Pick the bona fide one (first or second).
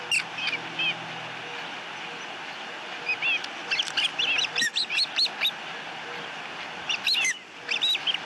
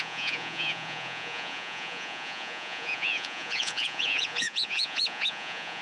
first